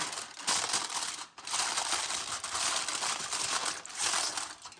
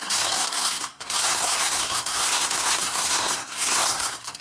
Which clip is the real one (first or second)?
first